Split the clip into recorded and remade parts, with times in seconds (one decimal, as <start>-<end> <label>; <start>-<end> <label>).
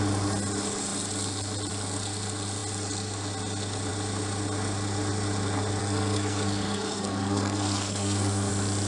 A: 0.0-5.8 recorded; 5.8-8.5 remade; 8.5-8.9 recorded